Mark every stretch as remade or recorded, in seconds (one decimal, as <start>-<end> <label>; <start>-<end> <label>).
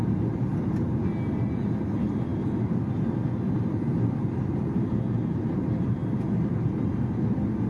0.0-7.7 recorded